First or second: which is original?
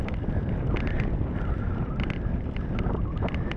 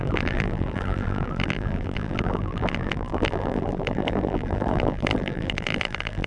first